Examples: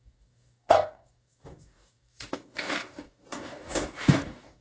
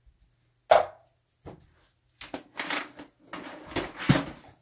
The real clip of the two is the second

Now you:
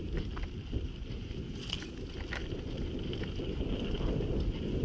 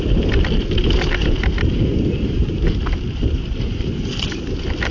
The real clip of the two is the first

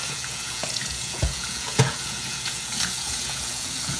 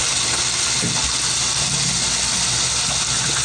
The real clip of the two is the second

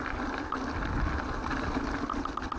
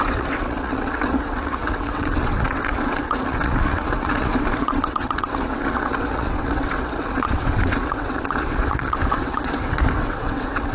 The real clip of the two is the first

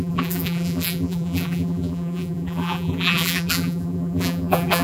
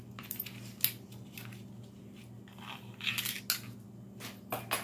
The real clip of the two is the second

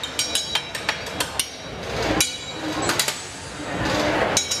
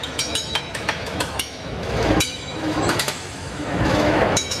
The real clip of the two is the first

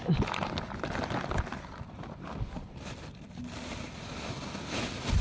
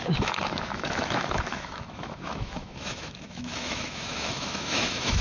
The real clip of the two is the first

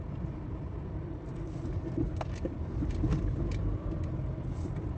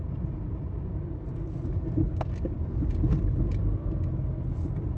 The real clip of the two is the second